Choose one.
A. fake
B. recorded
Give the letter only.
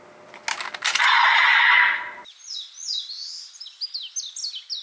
B